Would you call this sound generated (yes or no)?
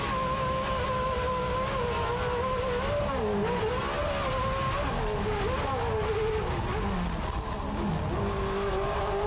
no